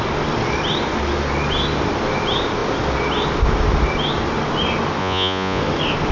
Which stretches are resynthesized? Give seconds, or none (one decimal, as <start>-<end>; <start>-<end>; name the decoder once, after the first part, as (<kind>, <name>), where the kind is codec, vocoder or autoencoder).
5.0-5.6 (vocoder, Vocos)